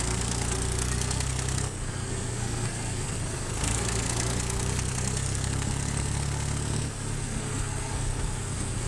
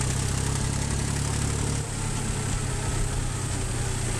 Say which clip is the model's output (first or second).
first